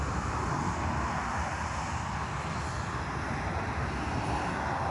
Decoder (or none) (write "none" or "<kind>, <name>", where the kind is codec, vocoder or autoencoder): none